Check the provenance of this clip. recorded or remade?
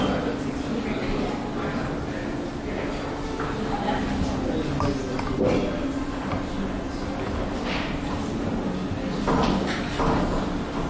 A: recorded